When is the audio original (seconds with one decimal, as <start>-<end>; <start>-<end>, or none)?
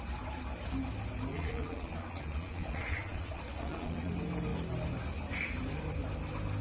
0.0-1.3; 4.1-6.6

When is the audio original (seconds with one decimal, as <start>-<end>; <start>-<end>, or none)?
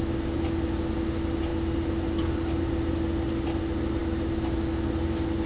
0.0-5.5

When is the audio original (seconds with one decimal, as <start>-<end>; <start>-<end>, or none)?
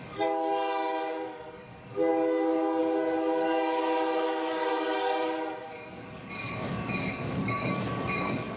none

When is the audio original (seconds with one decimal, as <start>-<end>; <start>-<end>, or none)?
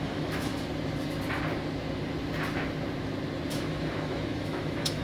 0.5-3.5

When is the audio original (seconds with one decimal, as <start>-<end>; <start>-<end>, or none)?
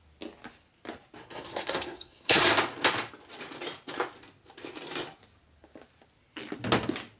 0.0-1.2; 2.4-7.2